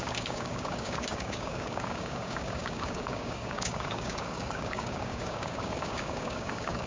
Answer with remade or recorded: remade